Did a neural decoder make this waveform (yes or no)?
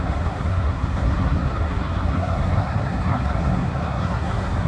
yes